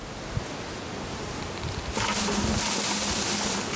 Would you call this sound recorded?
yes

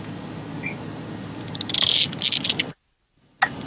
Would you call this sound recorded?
yes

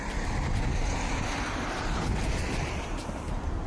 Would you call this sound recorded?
no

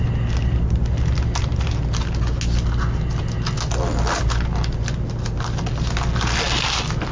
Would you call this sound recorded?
yes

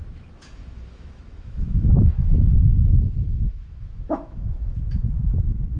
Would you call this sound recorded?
no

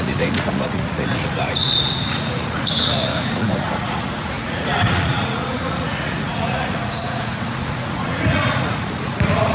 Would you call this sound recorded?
no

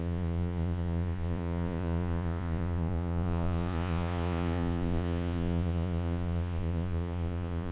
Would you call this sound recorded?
no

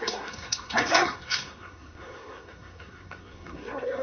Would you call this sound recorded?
no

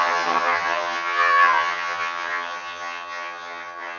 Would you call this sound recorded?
no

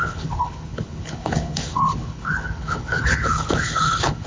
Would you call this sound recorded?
no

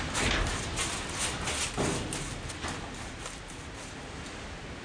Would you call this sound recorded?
yes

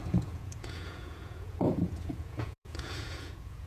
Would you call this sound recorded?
no